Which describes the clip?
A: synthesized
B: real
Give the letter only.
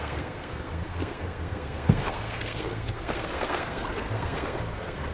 A